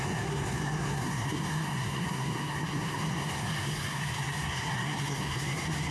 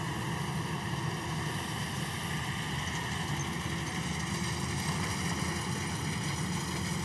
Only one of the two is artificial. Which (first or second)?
first